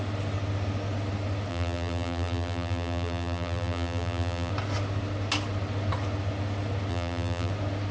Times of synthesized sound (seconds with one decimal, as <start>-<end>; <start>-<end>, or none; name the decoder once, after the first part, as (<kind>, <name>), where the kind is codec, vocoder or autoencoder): 1.5-4.5 (vocoder, BigVGAN v2); 6.9-7.5